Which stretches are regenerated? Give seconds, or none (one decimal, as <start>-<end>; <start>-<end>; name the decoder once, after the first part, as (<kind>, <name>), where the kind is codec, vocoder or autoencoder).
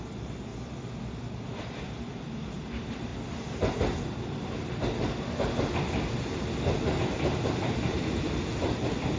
0.0-0.5 (vocoder, BigVGAN v2); 1.5-3.1; 7.0-9.2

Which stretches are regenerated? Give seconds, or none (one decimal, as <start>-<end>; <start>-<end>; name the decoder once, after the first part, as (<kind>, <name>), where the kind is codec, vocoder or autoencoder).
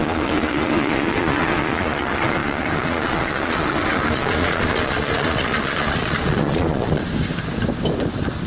0.0-7.0 (vocoder, Vocos)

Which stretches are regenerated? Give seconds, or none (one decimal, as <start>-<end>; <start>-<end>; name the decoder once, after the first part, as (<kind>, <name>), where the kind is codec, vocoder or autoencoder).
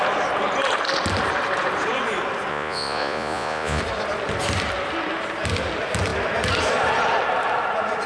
2.5-3.8 (vocoder, Vocos)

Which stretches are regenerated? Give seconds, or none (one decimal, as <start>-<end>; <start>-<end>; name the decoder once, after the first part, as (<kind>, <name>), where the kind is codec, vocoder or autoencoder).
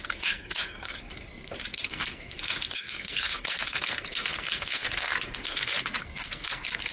0.0-6.9 (codec, SNAC)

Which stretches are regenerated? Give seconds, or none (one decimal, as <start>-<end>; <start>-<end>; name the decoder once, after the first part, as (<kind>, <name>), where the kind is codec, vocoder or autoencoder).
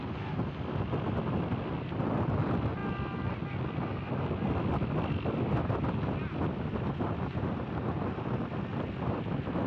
none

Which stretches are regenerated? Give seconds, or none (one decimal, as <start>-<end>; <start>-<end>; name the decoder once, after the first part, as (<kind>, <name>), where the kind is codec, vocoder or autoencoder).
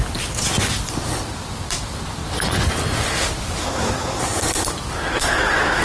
3.6-4.2 (codec, SNAC); 5.1-5.8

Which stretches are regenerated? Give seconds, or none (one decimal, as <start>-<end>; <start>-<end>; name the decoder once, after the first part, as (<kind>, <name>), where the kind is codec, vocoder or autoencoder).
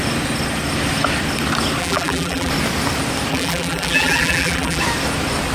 1.8-2.5 (vocoder, BigVGAN v2); 3.3-4.8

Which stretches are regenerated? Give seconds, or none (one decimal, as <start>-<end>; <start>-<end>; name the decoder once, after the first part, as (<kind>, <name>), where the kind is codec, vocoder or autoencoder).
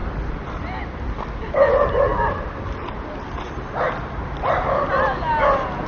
0.0-1.2 (vocoder, BigVGAN v2); 2.1-5.9